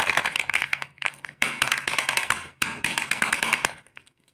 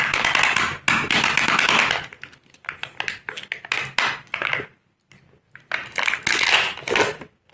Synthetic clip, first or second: first